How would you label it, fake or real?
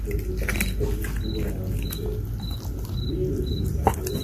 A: real